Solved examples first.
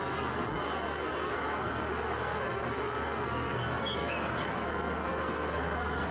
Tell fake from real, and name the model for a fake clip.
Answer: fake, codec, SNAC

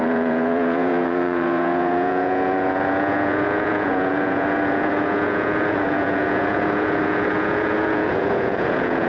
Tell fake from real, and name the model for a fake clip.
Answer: fake, vocoder, Vocos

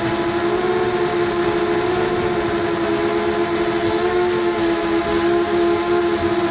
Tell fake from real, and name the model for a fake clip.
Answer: real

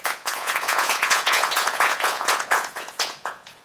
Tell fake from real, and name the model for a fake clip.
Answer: fake, vocoder, Vocos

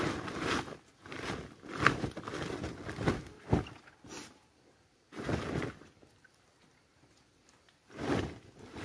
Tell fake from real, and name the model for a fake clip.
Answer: real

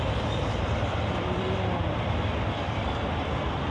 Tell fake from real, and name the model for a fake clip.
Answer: fake, vocoder, BigVGAN v2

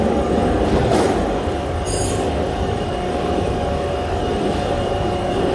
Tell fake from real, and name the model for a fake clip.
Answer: fake, codec, DAC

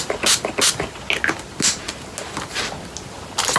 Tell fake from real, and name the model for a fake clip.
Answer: real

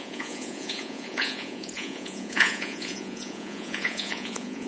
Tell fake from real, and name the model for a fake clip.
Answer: fake, vocoder, Vocos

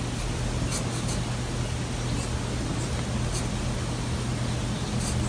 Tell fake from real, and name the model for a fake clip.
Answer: real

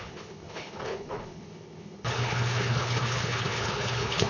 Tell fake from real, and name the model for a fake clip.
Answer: fake, codec, HILCodec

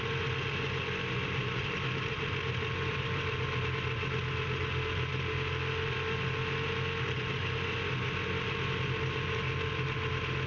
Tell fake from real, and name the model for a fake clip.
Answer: real